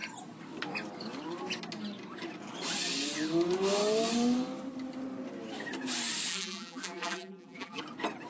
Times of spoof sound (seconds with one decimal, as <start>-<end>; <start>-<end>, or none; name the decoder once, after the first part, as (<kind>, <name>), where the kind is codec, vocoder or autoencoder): 6.3-7.8 (vocoder, BigVGAN v2)